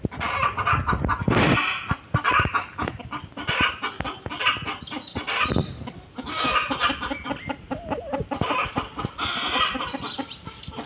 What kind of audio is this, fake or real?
real